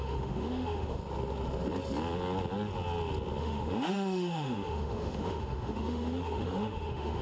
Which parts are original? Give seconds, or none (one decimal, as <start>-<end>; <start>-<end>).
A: 1.0-3.4